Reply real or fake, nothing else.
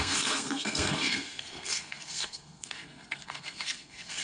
fake